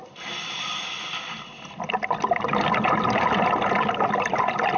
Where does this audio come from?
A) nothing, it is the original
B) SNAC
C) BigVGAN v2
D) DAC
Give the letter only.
C